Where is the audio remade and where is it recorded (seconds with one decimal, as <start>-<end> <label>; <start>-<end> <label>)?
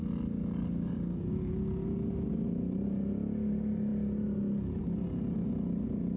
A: 0.0-0.6 recorded; 0.6-1.5 remade; 1.5-6.2 recorded